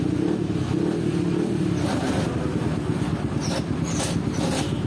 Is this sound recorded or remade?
recorded